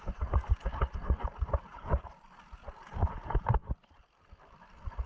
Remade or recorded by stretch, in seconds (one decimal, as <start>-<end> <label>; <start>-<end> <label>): 0.0-3.6 recorded; 3.6-5.1 remade